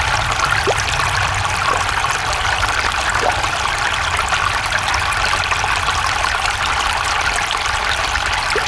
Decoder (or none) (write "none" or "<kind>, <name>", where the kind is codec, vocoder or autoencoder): none